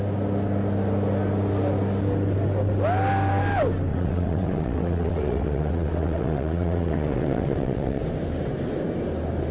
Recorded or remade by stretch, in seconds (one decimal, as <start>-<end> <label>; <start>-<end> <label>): 0.0-3.9 recorded; 3.9-8.0 remade; 8.0-9.5 recorded